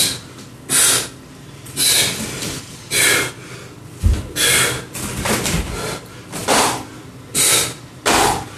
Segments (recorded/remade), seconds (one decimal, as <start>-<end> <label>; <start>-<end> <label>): 0.0-8.6 recorded